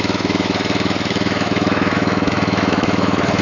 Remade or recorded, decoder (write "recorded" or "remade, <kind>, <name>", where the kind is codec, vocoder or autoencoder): remade, autoencoder, DAC-VAE